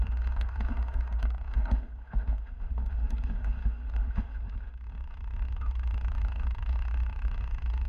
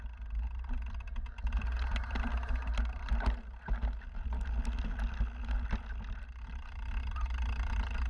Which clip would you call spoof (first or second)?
first